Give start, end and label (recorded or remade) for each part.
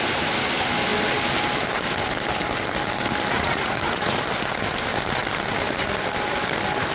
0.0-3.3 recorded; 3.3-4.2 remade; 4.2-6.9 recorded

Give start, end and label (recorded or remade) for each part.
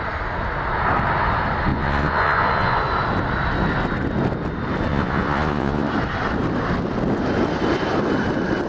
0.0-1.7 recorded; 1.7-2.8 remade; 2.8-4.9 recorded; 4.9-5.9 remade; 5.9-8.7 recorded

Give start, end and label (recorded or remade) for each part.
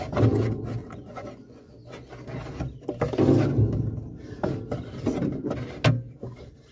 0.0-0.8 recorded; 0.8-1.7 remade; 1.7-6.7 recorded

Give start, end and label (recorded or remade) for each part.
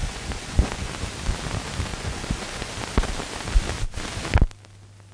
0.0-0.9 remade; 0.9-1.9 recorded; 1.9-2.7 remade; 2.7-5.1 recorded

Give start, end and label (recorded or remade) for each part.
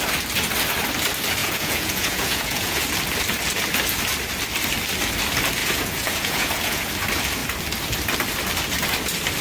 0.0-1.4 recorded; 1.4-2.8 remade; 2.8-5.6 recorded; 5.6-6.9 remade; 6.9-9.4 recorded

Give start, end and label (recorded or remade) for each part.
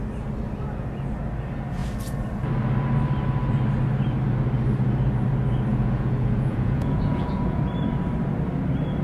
0.0-5.7 recorded; 5.7-7.6 remade; 7.6-9.0 recorded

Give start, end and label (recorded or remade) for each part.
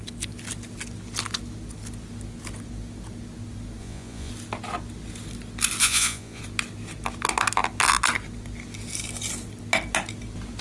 0.0-3.8 recorded; 3.8-4.3 remade; 4.3-5.8 recorded; 5.8-6.4 remade; 6.4-10.6 recorded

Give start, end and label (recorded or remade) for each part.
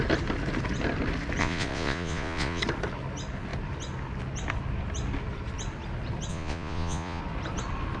0.0-1.4 recorded; 1.4-2.6 remade; 2.6-6.3 recorded; 6.3-7.2 remade; 7.2-8.0 recorded